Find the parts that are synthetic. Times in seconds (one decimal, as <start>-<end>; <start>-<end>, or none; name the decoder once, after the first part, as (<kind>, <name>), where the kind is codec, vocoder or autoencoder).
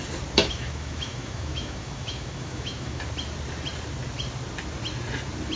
0.4-3.0 (autoencoder, DAC-VAE)